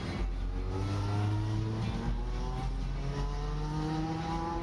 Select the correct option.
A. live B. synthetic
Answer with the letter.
A